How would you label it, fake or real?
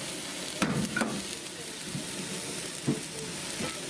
real